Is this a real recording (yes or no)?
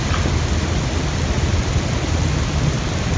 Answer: yes